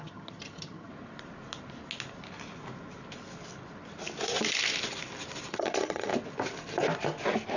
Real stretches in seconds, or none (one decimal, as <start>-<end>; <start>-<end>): 0.9-5.5; 6.1-7.6